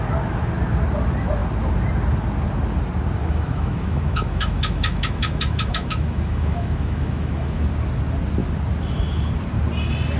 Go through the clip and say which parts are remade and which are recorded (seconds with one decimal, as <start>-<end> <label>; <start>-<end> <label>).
0.0-3.2 recorded; 3.2-7.7 remade; 7.7-10.2 recorded